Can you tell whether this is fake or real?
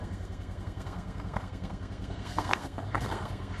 fake